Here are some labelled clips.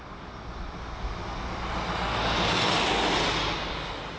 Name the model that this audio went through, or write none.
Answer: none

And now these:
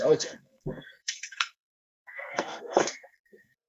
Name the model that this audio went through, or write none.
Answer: codec, SNAC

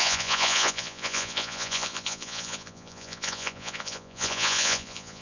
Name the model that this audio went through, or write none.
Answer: vocoder, Vocos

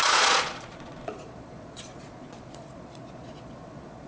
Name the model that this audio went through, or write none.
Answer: vocoder, Vocos